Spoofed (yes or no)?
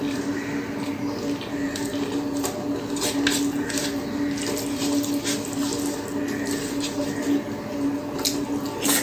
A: no